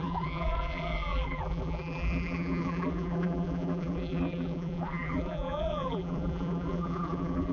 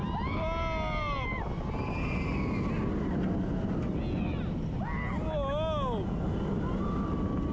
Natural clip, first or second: second